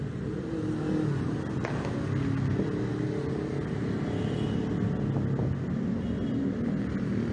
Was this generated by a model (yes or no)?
no